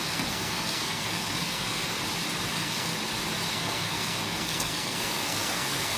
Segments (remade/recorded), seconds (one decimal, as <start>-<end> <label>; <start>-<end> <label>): 0.0-2.0 remade; 2.0-2.5 recorded; 2.5-2.9 remade; 2.9-3.5 recorded; 3.5-6.0 remade